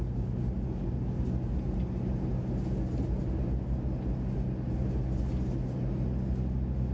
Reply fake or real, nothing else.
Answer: real